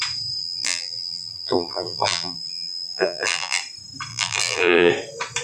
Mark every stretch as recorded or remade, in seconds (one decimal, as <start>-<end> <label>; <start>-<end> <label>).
0.0-0.4 recorded; 0.4-3.6 remade; 3.6-4.1 recorded; 4.1-4.9 remade; 4.9-5.4 recorded